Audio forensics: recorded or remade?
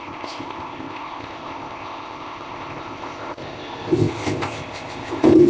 remade